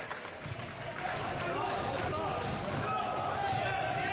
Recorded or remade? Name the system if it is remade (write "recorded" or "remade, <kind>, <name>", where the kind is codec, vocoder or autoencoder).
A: remade, codec, DAC